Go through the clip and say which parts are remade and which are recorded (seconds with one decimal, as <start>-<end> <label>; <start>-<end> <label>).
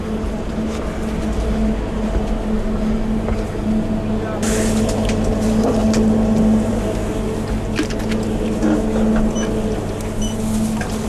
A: 0.0-11.1 recorded